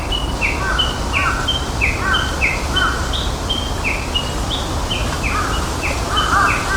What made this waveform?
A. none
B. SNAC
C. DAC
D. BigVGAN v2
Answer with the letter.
A